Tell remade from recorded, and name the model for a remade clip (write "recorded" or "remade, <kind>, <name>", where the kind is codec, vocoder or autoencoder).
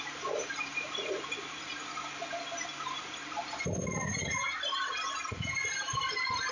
recorded